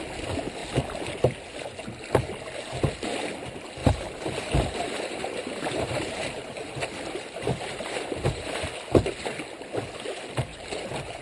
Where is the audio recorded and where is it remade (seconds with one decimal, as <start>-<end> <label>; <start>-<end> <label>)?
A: 0.0-3.8 recorded; 3.8-8.6 remade; 8.6-10.5 recorded; 10.5-11.2 remade